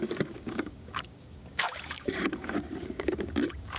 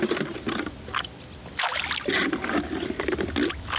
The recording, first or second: second